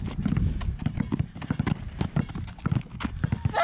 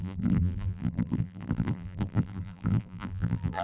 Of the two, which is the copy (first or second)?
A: second